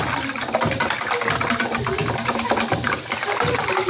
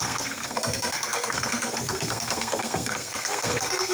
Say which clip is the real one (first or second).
first